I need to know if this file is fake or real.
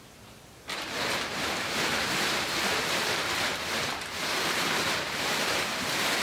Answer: fake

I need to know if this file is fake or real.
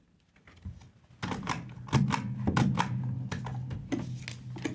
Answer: real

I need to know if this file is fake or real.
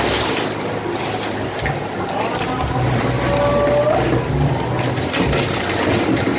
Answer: real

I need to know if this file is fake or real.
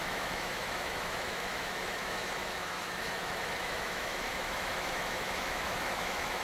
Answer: fake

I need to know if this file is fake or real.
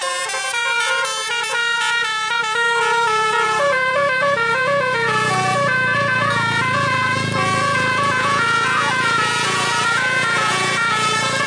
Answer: fake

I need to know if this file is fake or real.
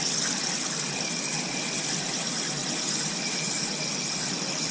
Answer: real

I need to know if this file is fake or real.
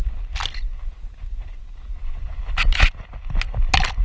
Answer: real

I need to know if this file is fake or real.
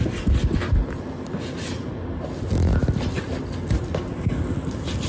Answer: real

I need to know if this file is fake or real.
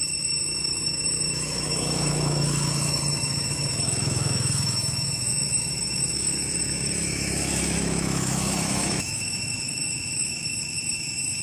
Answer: fake